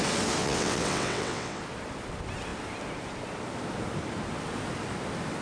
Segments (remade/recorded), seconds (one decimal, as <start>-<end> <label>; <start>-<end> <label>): 0.0-0.4 recorded; 0.4-1.6 remade; 1.6-5.4 recorded